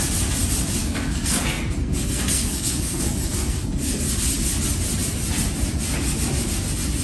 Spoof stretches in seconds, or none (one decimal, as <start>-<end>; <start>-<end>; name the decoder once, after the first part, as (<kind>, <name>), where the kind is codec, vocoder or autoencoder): 0.8-3.9 (codec, SNAC)